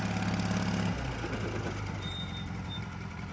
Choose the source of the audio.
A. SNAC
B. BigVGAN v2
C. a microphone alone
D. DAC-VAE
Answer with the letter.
C